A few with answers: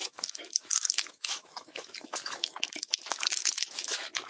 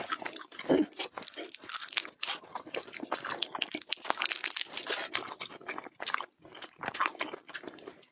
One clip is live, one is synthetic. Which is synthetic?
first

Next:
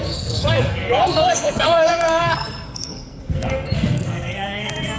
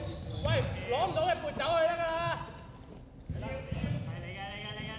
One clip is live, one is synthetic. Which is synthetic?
first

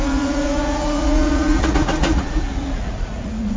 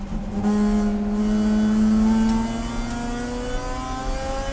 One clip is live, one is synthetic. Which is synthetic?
first